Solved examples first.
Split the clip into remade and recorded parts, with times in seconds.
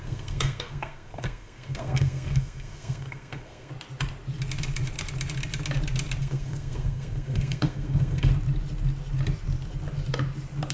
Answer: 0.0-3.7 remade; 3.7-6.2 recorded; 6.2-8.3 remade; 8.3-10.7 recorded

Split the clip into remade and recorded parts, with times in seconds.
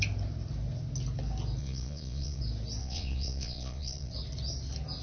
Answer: 0.0-1.6 recorded; 1.6-2.4 remade; 2.4-2.8 recorded; 2.8-4.1 remade; 4.1-5.0 recorded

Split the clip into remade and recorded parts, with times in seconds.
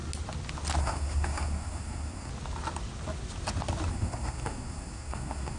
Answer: 0.0-0.8 recorded; 0.8-2.3 remade; 2.3-3.9 recorded; 3.9-5.6 remade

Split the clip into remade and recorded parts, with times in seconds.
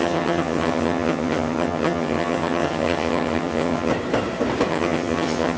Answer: 0.0-3.9 remade; 3.9-4.7 recorded; 4.7-5.6 remade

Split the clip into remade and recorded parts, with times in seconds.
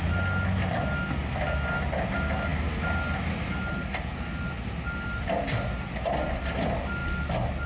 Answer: 0.0-7.7 recorded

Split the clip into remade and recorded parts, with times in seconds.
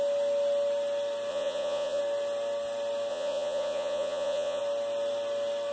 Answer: 0.0-1.3 recorded; 1.3-2.0 remade; 2.0-3.1 recorded; 3.1-4.6 remade; 4.6-5.7 recorded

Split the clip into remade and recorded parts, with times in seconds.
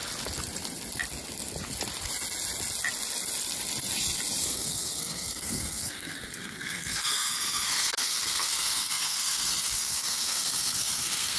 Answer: 0.0-4.4 recorded; 4.4-11.4 remade